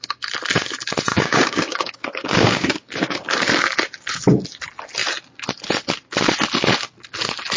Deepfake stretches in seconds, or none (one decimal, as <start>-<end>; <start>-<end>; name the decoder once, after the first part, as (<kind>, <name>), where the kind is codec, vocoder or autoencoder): 1.1-3.5 (codec, DAC)